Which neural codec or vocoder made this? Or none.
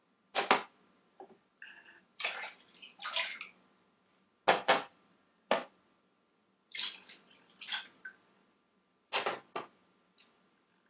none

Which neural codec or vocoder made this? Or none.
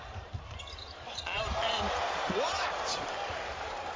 vocoder, BigVGAN v2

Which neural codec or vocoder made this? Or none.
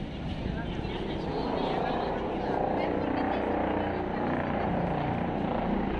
none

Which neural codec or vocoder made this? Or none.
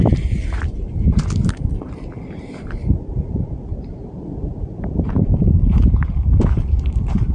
vocoder, BigVGAN v2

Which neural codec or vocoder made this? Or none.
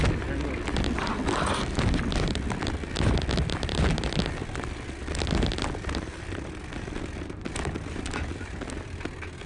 none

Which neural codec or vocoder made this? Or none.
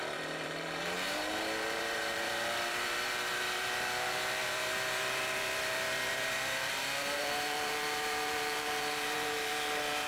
vocoder, BigVGAN v2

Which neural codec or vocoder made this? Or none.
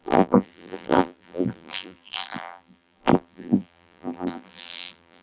vocoder, BigVGAN v2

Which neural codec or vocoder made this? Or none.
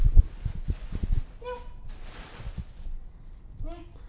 none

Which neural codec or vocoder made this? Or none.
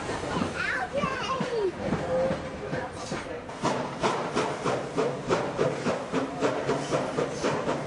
vocoder, BigVGAN v2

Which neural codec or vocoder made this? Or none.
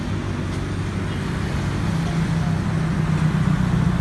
none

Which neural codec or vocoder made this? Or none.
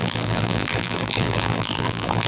vocoder, BigVGAN v2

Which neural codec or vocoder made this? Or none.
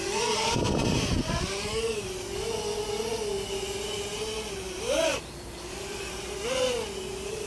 none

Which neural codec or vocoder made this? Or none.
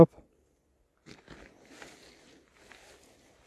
none